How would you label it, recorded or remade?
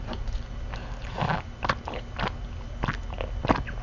recorded